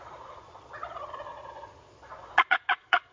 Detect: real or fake fake